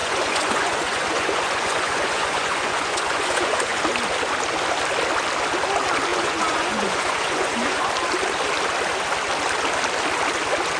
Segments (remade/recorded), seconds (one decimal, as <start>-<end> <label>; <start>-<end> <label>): 0.0-3.8 remade; 3.8-6.1 recorded; 6.1-7.9 remade; 7.9-10.8 recorded